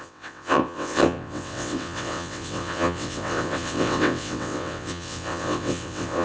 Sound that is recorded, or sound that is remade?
remade